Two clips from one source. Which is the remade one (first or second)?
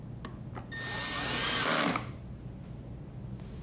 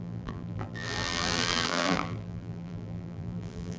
second